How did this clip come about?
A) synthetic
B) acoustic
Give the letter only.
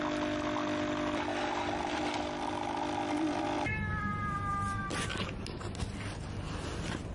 B